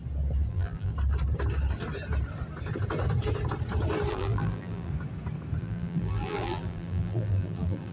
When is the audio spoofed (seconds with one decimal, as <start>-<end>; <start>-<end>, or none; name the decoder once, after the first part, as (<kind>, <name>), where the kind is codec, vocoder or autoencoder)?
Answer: 0.5-0.9 (vocoder, BigVGAN v2); 4.1-4.9; 5.6-7.9

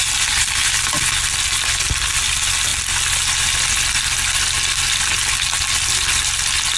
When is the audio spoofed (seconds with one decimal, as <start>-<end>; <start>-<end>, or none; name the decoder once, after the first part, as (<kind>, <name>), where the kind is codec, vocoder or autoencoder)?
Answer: none

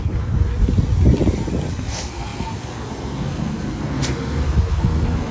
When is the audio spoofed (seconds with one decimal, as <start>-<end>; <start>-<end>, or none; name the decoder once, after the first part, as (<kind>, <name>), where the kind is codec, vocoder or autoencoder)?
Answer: 0.0-0.5 (codec, SNAC); 1.7-5.3

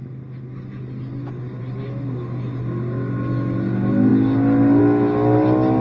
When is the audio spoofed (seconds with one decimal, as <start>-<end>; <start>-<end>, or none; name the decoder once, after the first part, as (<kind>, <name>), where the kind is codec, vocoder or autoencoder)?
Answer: none

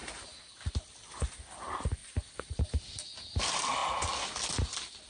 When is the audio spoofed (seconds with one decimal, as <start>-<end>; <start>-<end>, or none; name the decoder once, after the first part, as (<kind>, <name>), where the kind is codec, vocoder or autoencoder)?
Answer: 2.0-2.7 (vocoder, BigVGAN v2)

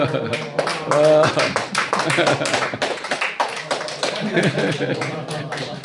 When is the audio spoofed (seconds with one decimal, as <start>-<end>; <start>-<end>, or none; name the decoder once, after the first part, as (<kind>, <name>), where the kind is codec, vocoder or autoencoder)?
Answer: 0.0-0.7 (vocoder, BigVGAN v2); 2.4-5.8